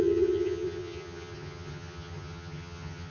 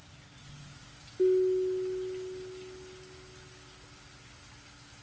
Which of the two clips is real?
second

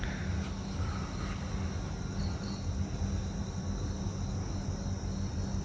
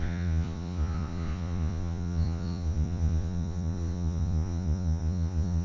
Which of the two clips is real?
first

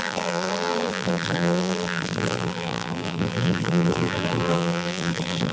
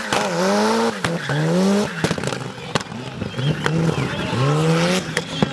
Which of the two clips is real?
second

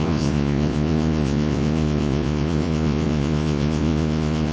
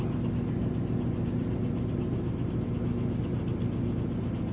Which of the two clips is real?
second